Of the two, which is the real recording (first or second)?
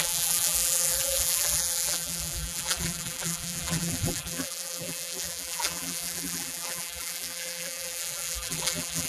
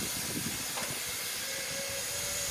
second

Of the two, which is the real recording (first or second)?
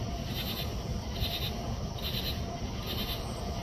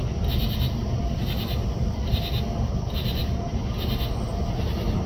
second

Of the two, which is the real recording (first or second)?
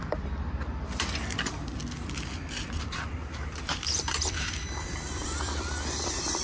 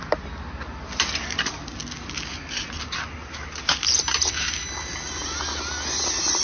second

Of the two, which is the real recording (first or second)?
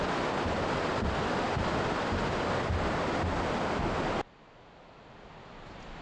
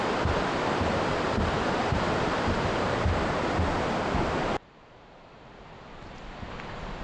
first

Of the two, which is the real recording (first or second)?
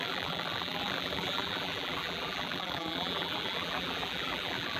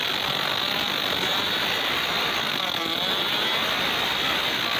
second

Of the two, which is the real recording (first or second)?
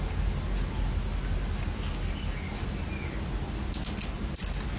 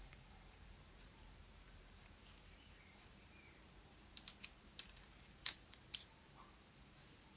first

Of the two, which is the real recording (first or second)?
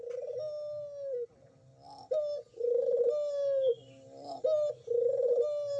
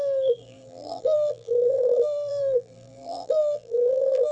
first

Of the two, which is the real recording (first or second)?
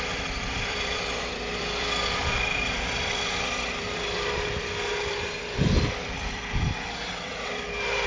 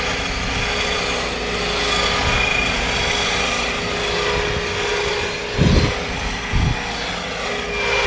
second